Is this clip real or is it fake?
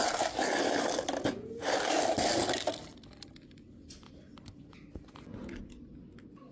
real